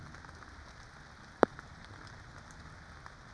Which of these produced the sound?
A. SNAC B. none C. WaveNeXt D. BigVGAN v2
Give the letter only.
B